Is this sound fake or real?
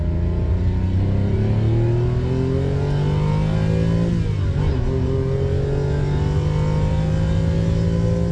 real